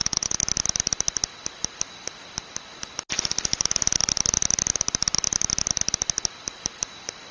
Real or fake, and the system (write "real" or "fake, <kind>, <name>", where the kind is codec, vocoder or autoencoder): real